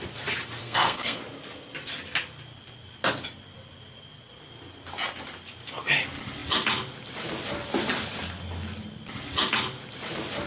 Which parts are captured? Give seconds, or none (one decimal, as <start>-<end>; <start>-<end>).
0.0-0.6; 1.2-10.5